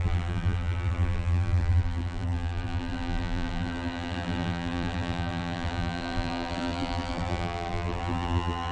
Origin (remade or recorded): remade